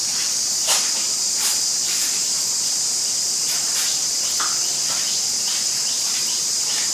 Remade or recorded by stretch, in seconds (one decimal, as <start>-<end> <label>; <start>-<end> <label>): 0.0-3.9 remade; 3.9-5.5 recorded; 5.5-6.9 remade